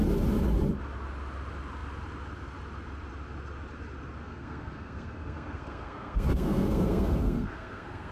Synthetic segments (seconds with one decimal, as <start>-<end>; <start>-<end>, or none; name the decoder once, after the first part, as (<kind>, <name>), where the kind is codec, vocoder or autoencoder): 4.2-8.1 (codec, SNAC)